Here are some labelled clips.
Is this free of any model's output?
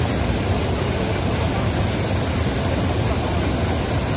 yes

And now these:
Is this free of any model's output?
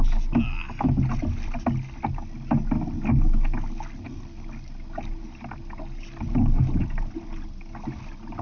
yes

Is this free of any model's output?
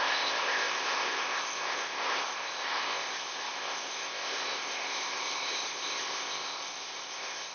no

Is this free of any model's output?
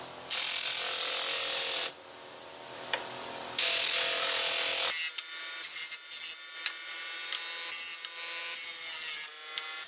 yes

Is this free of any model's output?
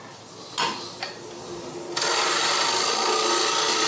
yes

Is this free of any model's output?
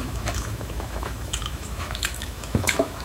no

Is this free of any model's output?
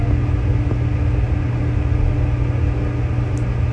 yes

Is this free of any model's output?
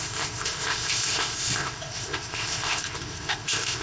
no